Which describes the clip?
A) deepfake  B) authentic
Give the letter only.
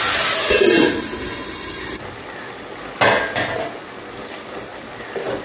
B